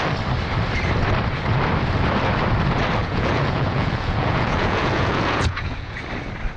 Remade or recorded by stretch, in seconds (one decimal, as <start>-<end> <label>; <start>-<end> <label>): 0.0-3.0 recorded; 3.0-6.0 remade; 6.0-6.6 recorded